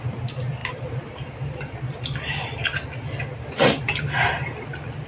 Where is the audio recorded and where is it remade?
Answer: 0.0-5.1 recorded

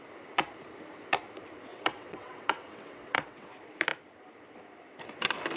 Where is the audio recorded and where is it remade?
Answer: 0.0-1.7 recorded; 1.7-3.5 remade; 3.5-5.6 recorded

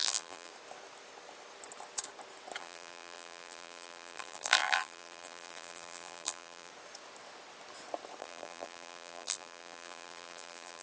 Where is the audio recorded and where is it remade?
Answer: 0.0-0.5 remade; 0.5-2.6 recorded; 2.6-6.7 remade; 6.7-8.2 recorded; 8.2-10.8 remade

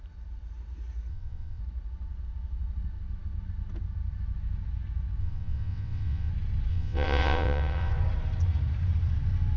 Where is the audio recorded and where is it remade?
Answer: 0.0-1.1 recorded; 1.1-1.6 remade; 1.6-5.2 recorded; 5.2-6.3 remade; 6.3-6.7 recorded; 6.7-7.9 remade; 7.9-9.6 recorded

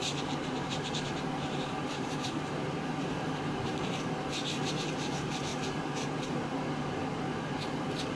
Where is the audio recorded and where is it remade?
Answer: 0.0-8.2 remade

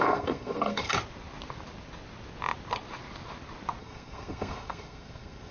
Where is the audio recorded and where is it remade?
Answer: 0.0-0.9 remade; 0.9-3.8 recorded; 3.8-5.5 remade